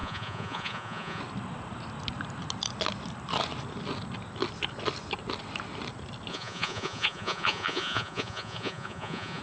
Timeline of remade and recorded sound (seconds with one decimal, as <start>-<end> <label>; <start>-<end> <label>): 0.0-1.2 remade; 1.2-6.3 recorded; 6.3-9.4 remade